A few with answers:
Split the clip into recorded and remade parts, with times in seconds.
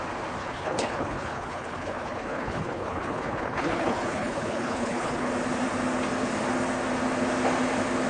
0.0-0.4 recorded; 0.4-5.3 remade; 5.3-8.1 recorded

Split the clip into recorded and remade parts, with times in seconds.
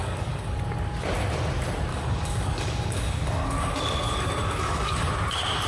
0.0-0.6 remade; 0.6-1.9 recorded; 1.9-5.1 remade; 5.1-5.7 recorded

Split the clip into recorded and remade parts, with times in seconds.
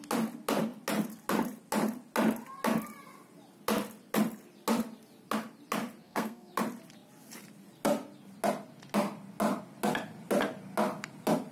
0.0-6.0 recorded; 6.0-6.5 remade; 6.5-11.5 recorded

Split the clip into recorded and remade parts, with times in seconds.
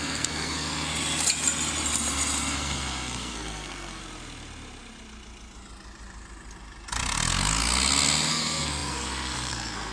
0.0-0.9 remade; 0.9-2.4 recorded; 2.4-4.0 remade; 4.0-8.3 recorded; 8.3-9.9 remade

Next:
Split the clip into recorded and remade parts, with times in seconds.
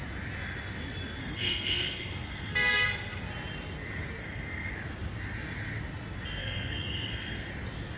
0.0-1.2 recorded; 1.2-3.2 remade; 3.2-4.2 recorded; 4.2-4.7 remade; 4.7-6.4 recorded; 6.4-7.5 remade; 7.5-8.0 recorded